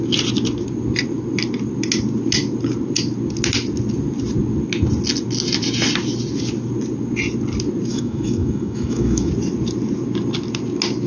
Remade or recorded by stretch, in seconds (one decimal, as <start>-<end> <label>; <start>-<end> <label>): 0.0-7.9 recorded; 7.9-9.3 remade; 9.3-11.1 recorded